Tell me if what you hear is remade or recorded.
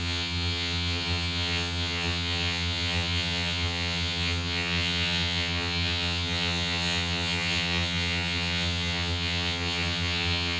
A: remade